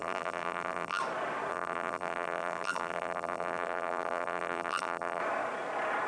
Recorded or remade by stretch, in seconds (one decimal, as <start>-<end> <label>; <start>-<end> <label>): 0.0-1.0 remade; 1.0-1.5 recorded; 1.5-5.2 remade; 5.2-6.1 recorded